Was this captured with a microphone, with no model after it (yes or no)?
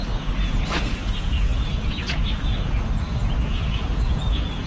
no